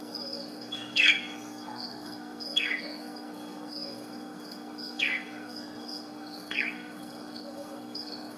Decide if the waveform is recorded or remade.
remade